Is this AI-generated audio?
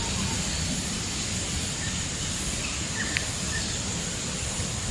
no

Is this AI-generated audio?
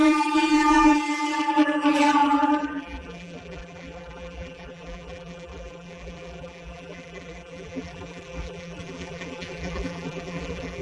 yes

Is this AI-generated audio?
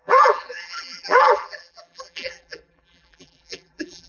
yes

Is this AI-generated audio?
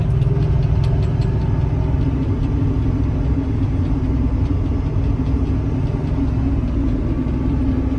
no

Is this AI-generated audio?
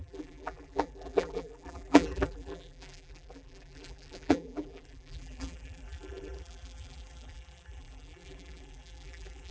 yes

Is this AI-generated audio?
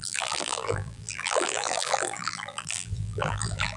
yes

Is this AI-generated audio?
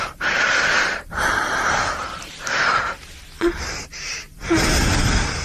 yes